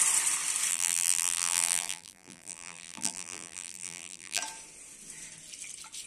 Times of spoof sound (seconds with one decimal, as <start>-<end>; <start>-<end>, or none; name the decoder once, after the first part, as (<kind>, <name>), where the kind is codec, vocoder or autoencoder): 0.7-4.4 (vocoder, BigVGAN v2)